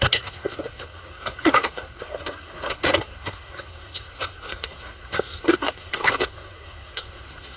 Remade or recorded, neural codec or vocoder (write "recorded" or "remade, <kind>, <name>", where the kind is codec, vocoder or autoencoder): remade, codec, SNAC